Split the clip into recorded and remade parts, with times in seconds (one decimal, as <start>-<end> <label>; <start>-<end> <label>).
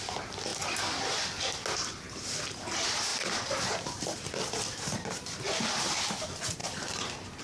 0.0-0.5 remade; 0.5-1.7 recorded; 1.7-7.4 remade